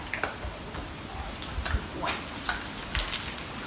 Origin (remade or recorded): recorded